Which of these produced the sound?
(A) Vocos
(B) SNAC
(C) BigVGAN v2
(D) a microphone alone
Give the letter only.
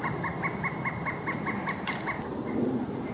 D